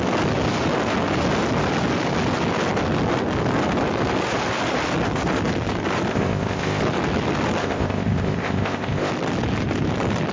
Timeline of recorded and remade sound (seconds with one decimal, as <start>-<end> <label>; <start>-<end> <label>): 0.0-6.1 recorded; 6.1-6.8 remade; 6.8-7.6 recorded; 7.6-9.1 remade; 9.1-10.3 recorded